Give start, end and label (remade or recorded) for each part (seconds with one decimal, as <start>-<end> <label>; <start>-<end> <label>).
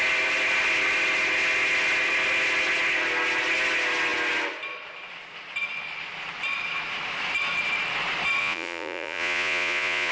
0.0-8.4 recorded; 8.4-10.1 remade